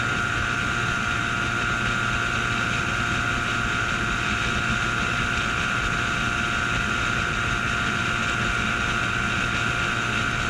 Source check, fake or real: real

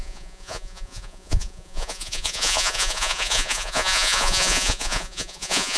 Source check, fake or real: fake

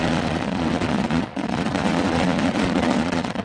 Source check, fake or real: fake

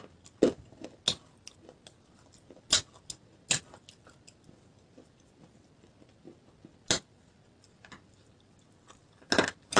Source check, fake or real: real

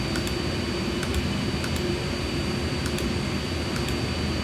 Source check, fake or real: real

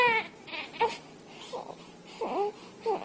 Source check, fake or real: real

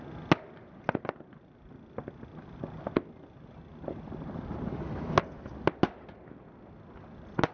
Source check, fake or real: real